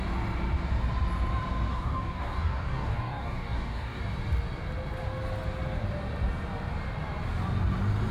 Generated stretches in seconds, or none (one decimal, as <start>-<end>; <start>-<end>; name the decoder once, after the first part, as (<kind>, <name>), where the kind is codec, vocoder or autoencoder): 1.7-4.0 (codec, DAC)